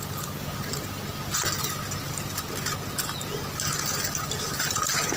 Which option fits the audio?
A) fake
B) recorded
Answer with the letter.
B